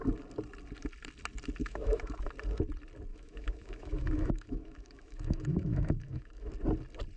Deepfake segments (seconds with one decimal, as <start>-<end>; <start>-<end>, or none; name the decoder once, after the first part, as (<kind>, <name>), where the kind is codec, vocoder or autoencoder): 1.6-2.3 (autoencoder, DAC-VAE); 3.1-6.5